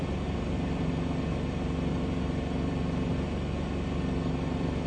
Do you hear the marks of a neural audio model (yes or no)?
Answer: no